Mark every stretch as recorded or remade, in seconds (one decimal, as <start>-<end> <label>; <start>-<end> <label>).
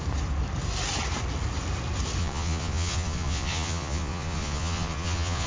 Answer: 0.0-2.2 recorded; 2.2-5.5 remade